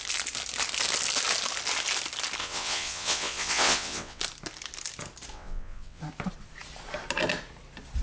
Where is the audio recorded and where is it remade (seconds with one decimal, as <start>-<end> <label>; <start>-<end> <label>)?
0.0-2.4 recorded; 2.4-4.2 remade; 4.2-5.3 recorded; 5.3-6.0 remade; 6.0-8.0 recorded